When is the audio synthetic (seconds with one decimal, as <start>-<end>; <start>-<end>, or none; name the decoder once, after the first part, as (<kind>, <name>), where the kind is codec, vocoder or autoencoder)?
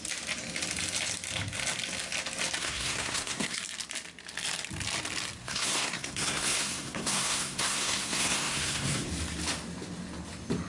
2.6-3.6 (codec, SNAC); 5.4-9.1